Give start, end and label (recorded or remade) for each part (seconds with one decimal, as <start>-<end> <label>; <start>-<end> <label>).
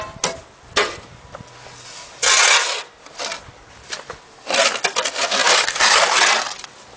0.0-7.0 recorded